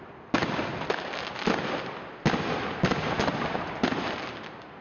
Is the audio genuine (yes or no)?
yes